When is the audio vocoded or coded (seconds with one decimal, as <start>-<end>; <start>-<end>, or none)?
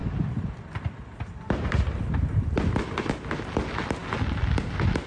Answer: none